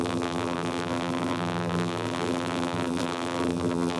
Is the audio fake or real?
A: fake